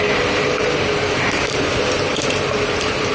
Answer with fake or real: real